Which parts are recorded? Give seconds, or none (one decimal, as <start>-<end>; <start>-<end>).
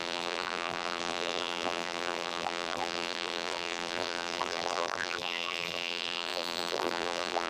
none